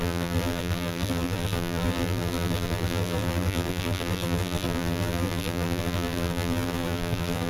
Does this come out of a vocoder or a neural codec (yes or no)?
yes